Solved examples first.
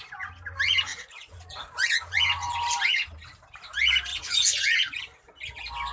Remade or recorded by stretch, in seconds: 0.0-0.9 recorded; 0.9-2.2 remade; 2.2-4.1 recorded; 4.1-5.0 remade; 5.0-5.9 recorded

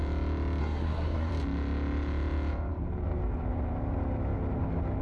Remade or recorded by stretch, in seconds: 0.0-0.6 recorded; 0.6-1.3 remade; 1.3-5.0 recorded

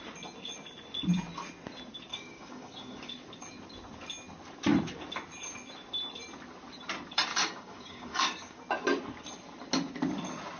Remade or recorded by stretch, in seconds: 0.0-2.1 recorded; 2.1-3.1 remade; 3.1-7.3 recorded; 7.3-8.6 remade; 8.6-10.6 recorded

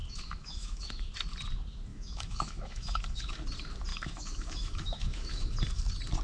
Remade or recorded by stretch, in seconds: 0.0-1.1 remade; 1.1-1.9 recorded; 1.9-3.4 remade; 3.4-3.9 recorded; 3.9-5.5 remade; 5.5-6.2 recorded